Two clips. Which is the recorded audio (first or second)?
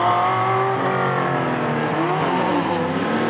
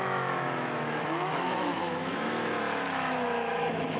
first